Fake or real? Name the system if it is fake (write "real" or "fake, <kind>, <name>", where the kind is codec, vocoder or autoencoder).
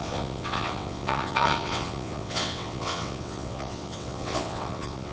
fake, vocoder, WaveNeXt